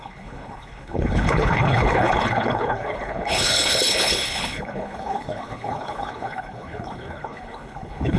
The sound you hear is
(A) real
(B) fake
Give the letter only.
B